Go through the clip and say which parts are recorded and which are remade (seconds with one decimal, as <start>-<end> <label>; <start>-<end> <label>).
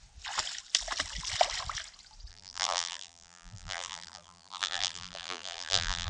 0.0-2.3 recorded; 2.3-6.1 remade